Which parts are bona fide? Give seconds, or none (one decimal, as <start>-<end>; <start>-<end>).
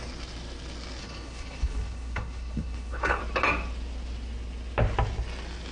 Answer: 0.0-1.0; 3.2-5.7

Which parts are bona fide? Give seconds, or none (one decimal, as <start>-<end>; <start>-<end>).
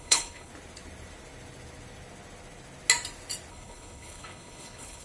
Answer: 0.5-3.5